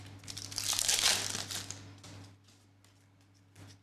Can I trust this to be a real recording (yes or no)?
yes